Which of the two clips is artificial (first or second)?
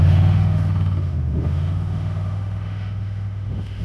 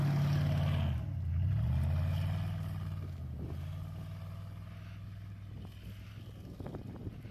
first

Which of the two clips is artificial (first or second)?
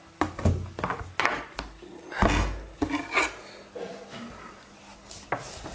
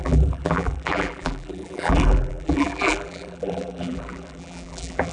second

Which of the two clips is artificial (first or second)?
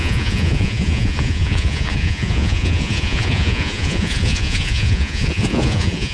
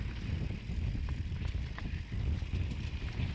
first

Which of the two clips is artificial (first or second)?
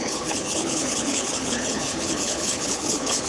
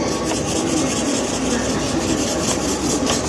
first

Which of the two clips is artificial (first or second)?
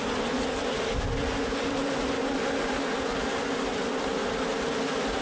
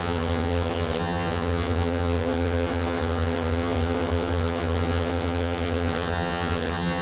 second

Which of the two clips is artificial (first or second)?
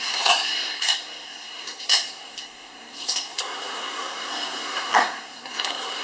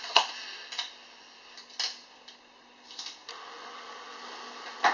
first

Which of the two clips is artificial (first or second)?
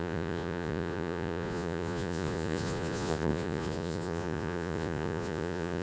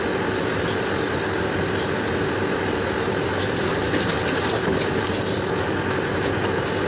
first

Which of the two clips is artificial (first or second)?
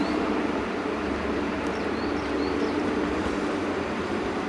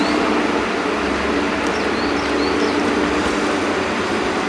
first